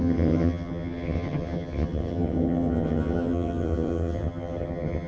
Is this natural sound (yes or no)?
no